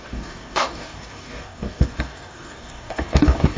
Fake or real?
fake